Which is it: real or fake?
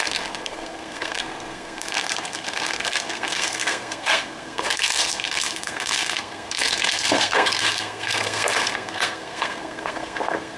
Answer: fake